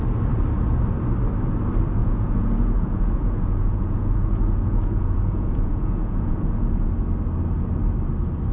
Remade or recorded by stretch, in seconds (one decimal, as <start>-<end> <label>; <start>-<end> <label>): 0.0-2.0 recorded; 2.0-6.9 remade; 6.9-8.5 recorded